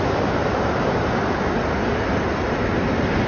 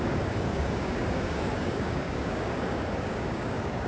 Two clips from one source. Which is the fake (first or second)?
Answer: second